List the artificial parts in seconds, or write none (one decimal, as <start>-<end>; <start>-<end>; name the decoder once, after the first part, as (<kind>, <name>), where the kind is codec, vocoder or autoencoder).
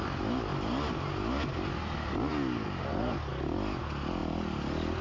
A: none